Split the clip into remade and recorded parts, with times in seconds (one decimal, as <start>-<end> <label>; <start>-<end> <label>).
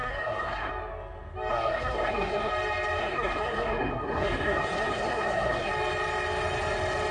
0.0-0.7 remade; 0.7-1.5 recorded; 1.5-2.5 remade; 2.5-3.0 recorded; 3.0-5.7 remade; 5.7-7.1 recorded